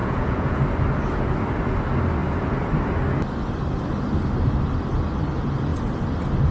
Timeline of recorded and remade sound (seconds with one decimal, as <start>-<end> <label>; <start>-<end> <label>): 0.0-0.6 remade; 0.6-6.5 recorded